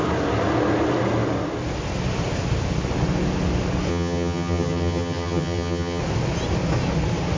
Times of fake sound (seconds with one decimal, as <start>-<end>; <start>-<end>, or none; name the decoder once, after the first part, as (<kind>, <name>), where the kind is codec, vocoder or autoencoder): 3.9-6.0 (vocoder, HiFi-GAN)